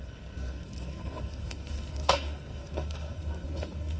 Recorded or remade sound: remade